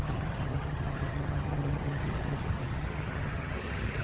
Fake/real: fake